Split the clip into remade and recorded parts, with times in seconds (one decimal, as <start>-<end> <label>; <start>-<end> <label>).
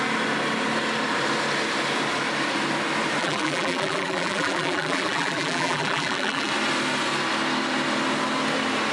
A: 0.0-3.2 recorded; 3.2-6.5 remade; 6.5-8.9 recorded